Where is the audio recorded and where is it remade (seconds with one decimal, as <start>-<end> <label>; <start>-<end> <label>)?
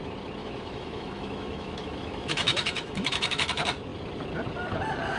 0.0-0.4 recorded; 0.4-3.5 remade; 3.5-5.2 recorded